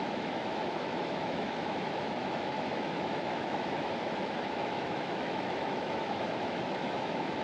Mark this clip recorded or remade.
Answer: remade